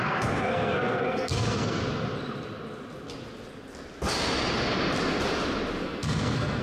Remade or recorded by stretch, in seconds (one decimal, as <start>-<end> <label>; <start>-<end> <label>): 0.0-1.8 remade; 1.8-5.8 recorded; 5.8-6.6 remade